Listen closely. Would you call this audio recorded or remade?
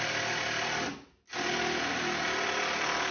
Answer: recorded